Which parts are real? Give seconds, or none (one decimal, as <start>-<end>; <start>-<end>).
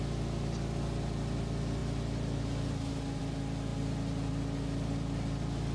0.0-5.7